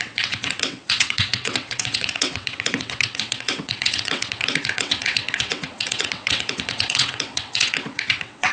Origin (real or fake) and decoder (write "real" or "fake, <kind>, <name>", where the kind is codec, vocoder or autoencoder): fake, vocoder, WaveNeXt